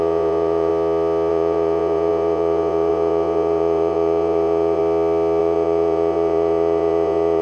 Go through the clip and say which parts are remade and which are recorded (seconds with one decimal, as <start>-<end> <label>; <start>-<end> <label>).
0.0-0.7 remade; 0.7-1.3 recorded; 1.3-4.8 remade; 4.8-5.4 recorded; 5.4-7.4 remade